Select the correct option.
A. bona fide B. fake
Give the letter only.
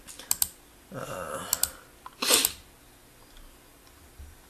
A